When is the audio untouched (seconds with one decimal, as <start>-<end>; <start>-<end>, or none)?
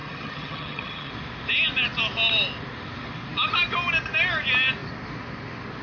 1.1-5.8